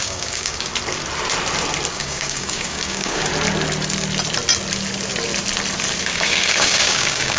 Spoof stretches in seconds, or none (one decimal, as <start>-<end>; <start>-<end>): 0.0-0.7; 1.9-3.3; 6.0-7.4

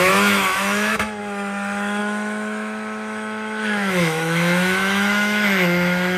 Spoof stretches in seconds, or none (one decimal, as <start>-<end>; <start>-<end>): 0.0-6.2

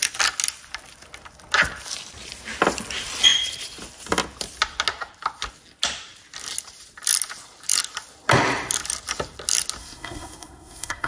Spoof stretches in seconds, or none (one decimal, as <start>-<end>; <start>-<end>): 9.8-11.1

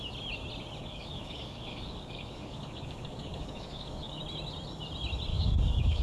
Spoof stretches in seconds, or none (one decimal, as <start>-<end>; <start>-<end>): 0.8-4.2; 5.3-6.0

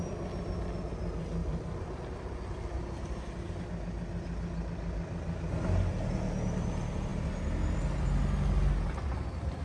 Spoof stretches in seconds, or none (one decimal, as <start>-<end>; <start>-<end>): 1.4-3.6

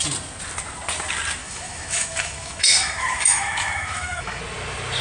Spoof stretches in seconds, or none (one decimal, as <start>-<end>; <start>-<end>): 1.4-4.4

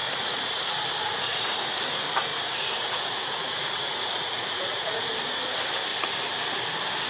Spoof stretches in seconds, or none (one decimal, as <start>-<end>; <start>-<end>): 0.0-1.7; 2.3-5.1

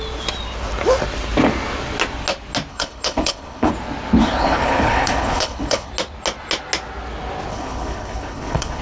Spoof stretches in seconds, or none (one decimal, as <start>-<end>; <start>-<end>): 2.7-3.7; 4.2-5.9; 7.5-8.8